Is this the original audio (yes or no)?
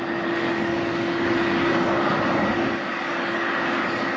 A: no